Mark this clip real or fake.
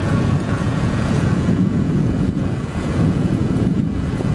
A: fake